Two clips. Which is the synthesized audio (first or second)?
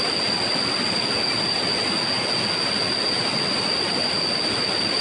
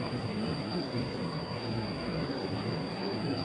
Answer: second